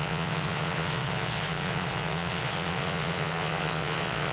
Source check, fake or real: fake